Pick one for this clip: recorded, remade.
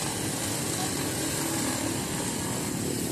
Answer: recorded